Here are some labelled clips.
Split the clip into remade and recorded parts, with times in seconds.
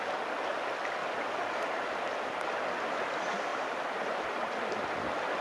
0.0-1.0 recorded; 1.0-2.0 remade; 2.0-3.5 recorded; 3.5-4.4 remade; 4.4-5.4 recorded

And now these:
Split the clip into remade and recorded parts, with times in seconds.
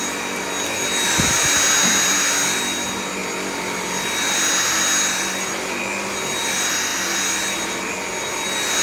0.0-8.8 recorded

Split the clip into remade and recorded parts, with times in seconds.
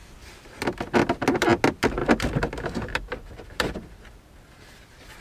0.0-2.0 recorded; 2.0-4.2 remade; 4.2-5.2 recorded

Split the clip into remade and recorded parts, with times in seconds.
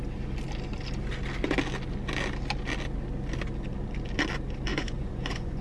0.0-4.7 recorded; 4.7-5.6 remade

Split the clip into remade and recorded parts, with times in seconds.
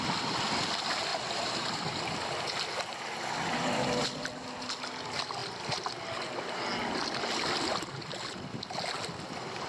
0.0-9.7 recorded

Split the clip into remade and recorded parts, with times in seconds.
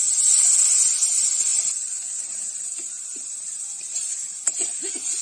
0.0-5.2 recorded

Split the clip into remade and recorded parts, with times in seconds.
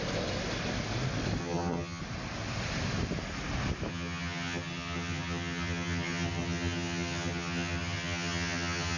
0.0-1.4 recorded; 1.4-2.0 remade; 2.0-3.9 recorded; 3.9-9.0 remade